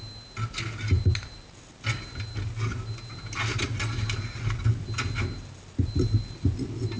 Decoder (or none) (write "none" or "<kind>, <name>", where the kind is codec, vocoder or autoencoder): none